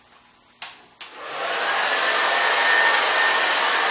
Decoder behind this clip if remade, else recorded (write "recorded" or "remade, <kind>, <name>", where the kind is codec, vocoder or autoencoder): recorded